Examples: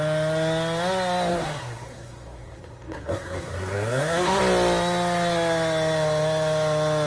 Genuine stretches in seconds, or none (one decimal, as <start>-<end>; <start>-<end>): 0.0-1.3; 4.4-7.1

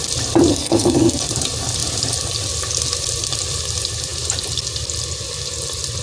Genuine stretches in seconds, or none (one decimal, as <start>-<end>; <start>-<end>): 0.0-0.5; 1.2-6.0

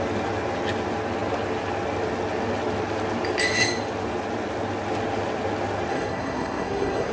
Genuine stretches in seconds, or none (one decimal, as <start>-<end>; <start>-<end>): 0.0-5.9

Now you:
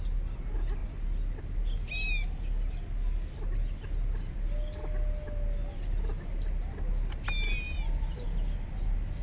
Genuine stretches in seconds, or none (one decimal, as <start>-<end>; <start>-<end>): 0.0-9.2